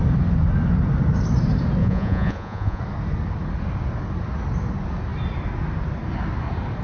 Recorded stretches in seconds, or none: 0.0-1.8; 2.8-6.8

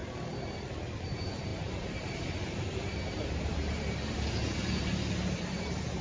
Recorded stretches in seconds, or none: 0.0-1.1

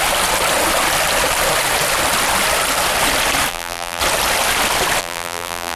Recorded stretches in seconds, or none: 0.0-3.5; 4.0-5.0

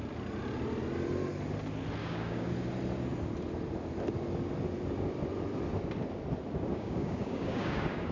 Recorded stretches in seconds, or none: 0.0-2.0; 2.5-6.7

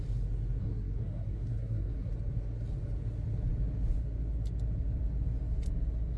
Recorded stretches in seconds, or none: 0.0-0.6; 2.1-6.2

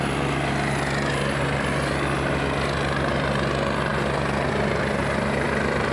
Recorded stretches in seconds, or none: 0.0-5.9

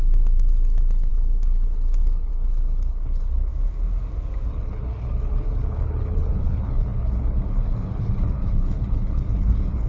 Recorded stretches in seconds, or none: 3.5-4.5

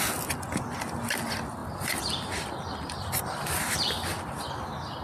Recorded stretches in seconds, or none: 0.0-1.6; 4.4-5.0